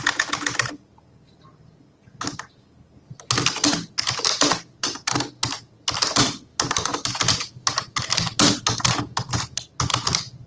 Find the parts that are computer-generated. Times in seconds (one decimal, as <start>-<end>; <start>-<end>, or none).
none